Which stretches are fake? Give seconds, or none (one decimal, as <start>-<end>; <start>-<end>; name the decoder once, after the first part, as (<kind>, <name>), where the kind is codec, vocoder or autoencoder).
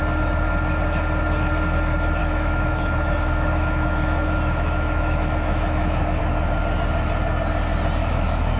2.2-6.2 (autoencoder, DAC-VAE); 8.0-8.6